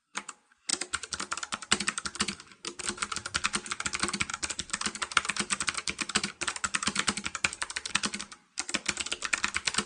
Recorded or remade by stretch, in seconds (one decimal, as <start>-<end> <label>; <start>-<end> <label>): 0.0-0.7 recorded; 0.7-2.8 remade; 2.8-4.3 recorded; 4.3-7.9 remade; 7.9-9.9 recorded